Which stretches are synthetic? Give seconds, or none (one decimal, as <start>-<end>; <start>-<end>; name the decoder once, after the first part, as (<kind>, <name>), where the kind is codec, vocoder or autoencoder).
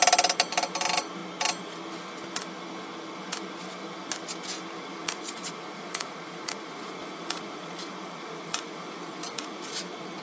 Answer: 5.0-10.2 (vocoder, Vocos)